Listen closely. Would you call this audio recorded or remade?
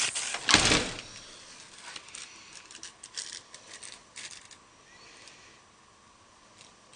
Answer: recorded